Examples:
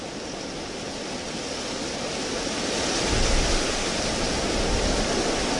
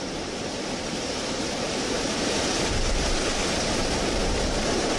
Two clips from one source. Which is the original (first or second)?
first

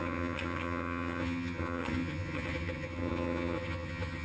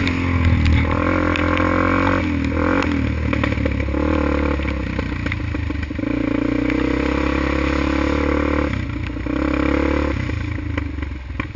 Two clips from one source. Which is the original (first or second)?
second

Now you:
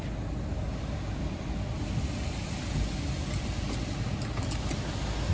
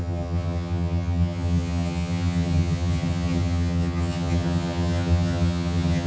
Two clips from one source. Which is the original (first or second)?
first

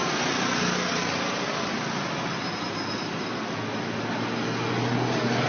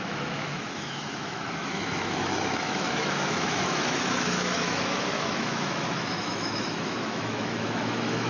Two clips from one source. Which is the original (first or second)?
first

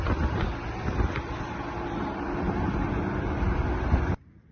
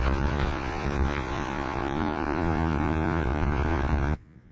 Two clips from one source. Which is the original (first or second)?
first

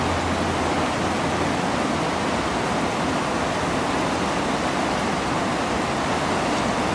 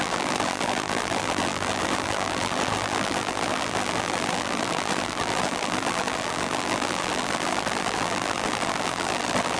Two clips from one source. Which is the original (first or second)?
first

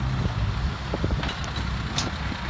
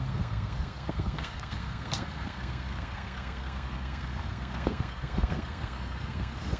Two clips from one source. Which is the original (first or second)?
first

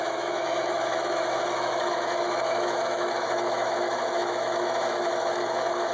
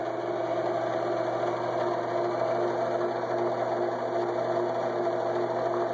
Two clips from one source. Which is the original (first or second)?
second